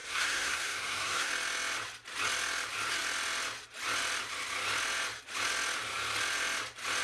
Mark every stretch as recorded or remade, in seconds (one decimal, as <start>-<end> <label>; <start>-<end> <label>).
0.0-1.3 remade; 1.3-7.0 recorded